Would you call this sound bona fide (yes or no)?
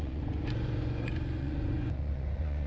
no